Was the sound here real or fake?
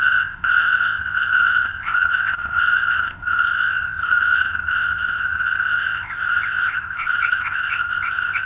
fake